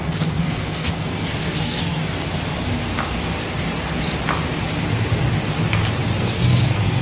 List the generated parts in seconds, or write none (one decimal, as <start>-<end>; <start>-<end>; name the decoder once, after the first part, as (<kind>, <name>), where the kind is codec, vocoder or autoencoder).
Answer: 0.0-2.0 (codec, SNAC); 6.2-7.0

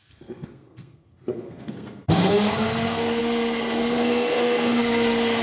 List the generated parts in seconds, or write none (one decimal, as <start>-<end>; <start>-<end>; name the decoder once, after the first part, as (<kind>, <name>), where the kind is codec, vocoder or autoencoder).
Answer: 0.0-5.4 (codec, SNAC)